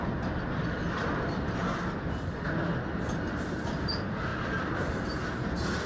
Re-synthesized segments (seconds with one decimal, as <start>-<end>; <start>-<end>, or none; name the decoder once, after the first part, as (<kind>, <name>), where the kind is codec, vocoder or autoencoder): 4.3-5.0 (vocoder, BigVGAN v2)